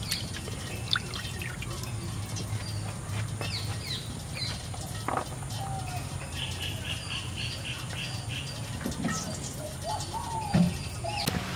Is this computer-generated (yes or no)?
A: no